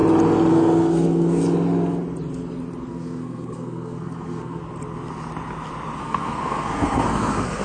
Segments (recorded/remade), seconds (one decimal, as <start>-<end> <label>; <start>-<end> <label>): 0.0-0.5 recorded; 0.5-1.4 remade; 1.4-2.9 recorded; 2.9-4.6 remade; 4.6-6.0 recorded; 6.0-7.6 remade